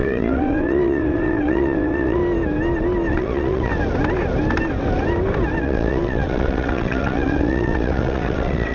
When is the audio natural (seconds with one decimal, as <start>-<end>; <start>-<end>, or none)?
2.2-3.1; 3.7-5.6